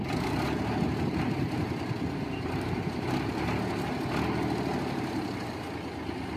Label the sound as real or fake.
real